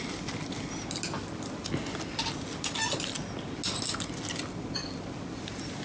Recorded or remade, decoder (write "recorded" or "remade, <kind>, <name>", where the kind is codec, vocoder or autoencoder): recorded